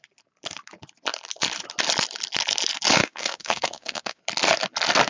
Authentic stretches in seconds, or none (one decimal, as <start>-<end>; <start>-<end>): 0.0-3.0; 4.2-5.1